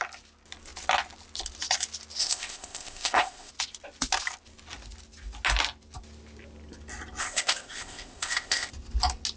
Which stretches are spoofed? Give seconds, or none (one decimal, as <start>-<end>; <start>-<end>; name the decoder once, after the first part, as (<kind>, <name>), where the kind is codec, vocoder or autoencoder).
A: 2.2-3.5 (codec, ZipCodec); 7.2-8.7